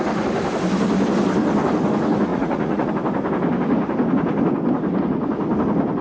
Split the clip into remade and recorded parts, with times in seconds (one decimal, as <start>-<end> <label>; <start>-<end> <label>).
0.0-2.3 recorded; 2.3-2.9 remade; 2.9-6.0 recorded